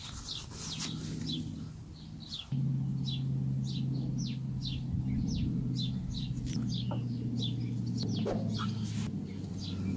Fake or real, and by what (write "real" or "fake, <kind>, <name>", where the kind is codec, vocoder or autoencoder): real